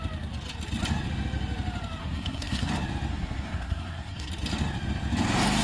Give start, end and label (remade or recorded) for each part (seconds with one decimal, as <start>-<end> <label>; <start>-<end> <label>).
0.0-2.0 recorded; 2.0-2.7 remade; 2.7-3.1 recorded; 3.1-4.3 remade; 4.3-5.6 recorded